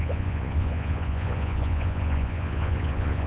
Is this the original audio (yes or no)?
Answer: no